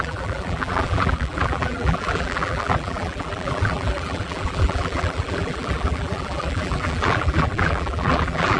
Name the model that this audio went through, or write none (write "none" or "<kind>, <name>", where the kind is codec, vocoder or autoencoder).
vocoder, BigVGAN v2